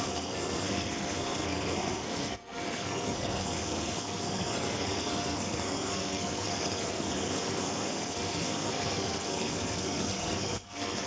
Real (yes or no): no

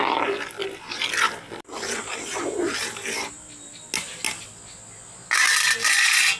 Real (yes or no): yes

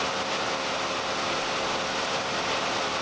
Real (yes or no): yes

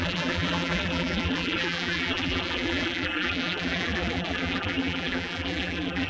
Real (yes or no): no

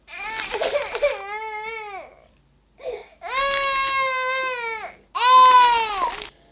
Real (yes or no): yes